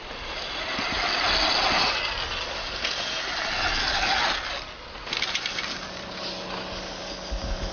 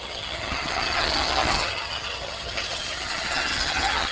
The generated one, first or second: second